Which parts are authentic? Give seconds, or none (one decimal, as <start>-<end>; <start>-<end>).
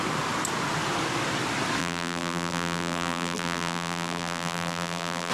0.0-1.8